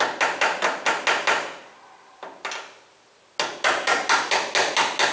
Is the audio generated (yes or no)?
no